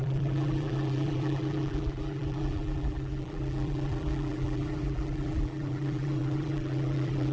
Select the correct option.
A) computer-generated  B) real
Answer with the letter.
A